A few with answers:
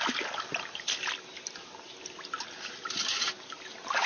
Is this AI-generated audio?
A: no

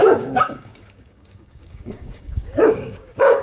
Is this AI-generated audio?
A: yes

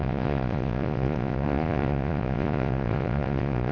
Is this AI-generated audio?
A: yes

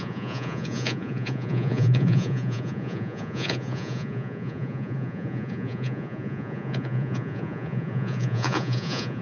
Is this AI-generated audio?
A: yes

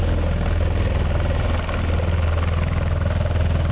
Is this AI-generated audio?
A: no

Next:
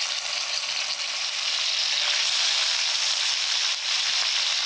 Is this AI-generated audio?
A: no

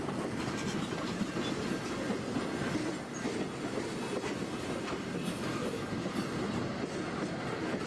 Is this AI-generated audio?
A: no